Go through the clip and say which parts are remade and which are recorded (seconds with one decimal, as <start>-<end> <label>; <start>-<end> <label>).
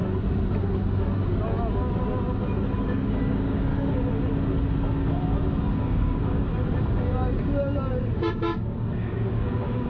0.0-2.8 recorded; 2.8-3.7 remade; 3.7-5.8 recorded; 5.8-6.5 remade; 6.5-8.2 recorded; 8.2-9.9 remade